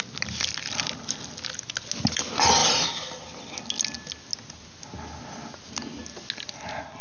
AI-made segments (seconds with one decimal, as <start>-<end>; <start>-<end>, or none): none